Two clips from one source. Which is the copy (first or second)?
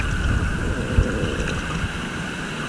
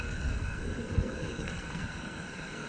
second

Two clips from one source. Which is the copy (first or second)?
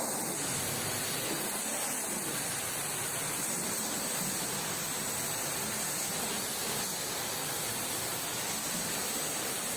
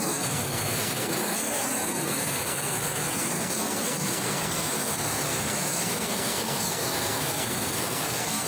second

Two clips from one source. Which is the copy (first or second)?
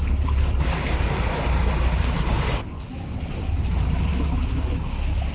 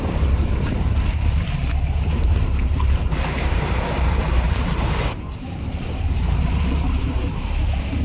second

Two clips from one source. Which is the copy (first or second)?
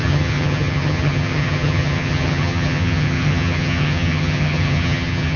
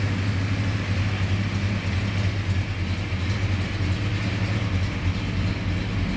first